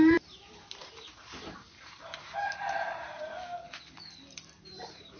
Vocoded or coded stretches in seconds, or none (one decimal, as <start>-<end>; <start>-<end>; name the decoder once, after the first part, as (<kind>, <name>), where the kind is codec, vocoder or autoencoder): 0.0-3.5 (vocoder, BigVGAN v2); 4.6-5.2